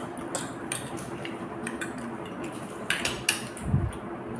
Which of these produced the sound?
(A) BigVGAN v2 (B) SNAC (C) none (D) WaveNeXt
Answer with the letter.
C